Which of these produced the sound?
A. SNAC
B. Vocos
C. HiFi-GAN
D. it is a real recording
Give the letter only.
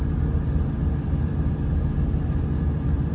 D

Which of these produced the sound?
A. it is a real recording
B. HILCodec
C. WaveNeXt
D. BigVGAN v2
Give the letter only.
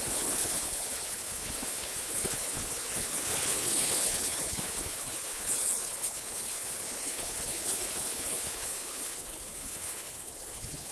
B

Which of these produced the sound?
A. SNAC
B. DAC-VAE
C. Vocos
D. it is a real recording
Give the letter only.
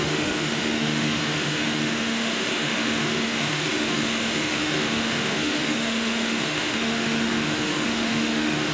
B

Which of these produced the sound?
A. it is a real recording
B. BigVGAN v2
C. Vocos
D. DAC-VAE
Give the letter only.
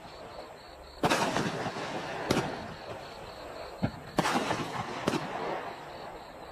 A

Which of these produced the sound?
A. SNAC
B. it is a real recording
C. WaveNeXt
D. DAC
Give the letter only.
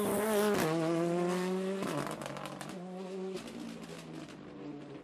B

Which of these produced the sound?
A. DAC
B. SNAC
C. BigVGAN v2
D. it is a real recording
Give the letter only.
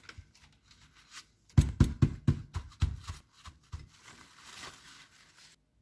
D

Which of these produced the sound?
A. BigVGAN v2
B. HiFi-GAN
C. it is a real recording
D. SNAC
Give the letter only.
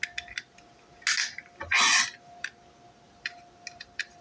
C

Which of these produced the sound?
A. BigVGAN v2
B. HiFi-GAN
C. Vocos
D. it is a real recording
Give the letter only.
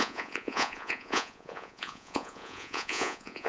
C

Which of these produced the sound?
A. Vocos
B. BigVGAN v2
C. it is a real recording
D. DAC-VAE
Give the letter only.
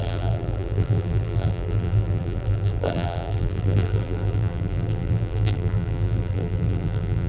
B